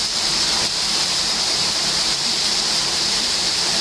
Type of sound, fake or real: fake